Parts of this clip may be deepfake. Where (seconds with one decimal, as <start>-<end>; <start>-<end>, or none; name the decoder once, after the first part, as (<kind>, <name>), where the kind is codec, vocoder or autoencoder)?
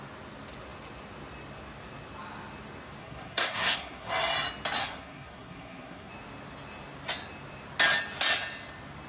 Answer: 3.0-4.1 (codec, SNAC); 4.8-6.1